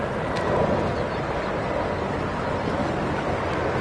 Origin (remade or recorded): recorded